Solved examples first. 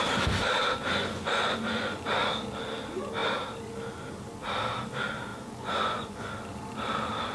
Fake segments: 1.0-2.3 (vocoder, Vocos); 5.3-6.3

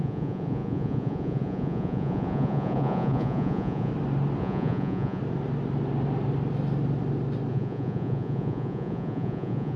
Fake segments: 0.0-3.9 (vocoder, Vocos); 4.4-5.2; 7.5-9.8

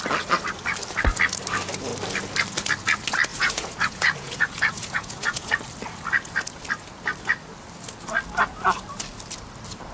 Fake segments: 3.3-5.6 (vocoder, Vocos)

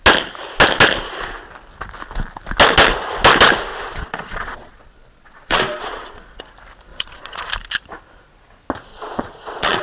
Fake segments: 3.7-6.4 (vocoder, Vocos); 6.9-7.5; 8.9-9.8

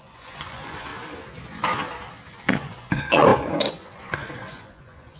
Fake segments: 0.0-0.9 (vocoder, Vocos); 2.3-5.2

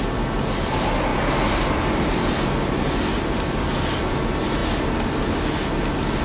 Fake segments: none